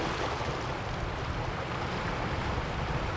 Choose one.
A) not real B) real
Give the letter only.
B